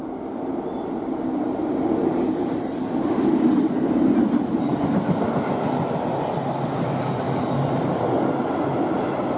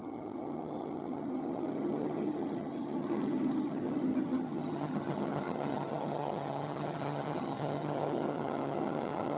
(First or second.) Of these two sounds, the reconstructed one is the second